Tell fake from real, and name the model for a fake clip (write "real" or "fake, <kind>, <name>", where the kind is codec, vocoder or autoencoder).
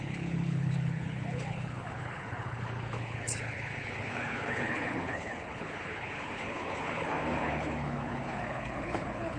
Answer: fake, codec, HILCodec